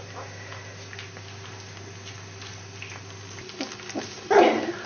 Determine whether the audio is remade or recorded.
recorded